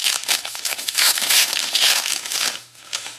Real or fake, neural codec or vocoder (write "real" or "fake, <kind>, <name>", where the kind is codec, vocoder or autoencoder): fake, autoencoder, DAC-VAE